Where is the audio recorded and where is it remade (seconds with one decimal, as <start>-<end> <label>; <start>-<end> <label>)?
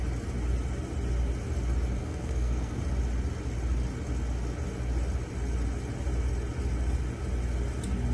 0.0-2.0 recorded; 2.0-2.8 remade; 2.8-8.1 recorded